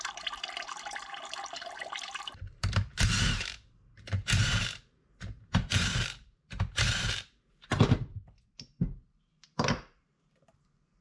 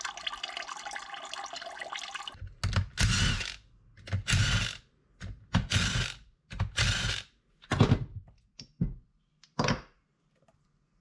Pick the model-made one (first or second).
first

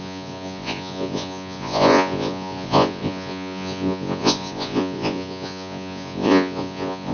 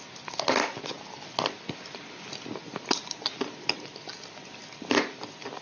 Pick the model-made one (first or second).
first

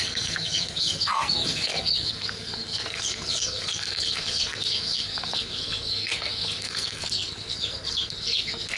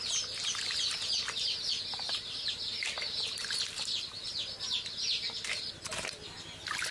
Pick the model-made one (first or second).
first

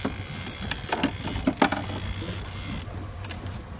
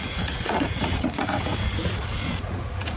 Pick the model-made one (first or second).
second